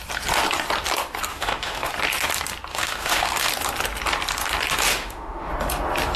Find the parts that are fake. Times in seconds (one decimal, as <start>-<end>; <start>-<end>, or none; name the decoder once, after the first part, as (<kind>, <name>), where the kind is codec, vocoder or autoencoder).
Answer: 1.3-1.9 (autoencoder, DAC-VAE); 2.7-3.5; 4.9-5.5